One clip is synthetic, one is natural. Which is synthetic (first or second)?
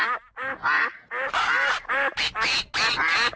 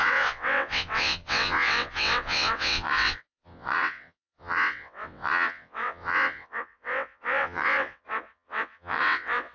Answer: second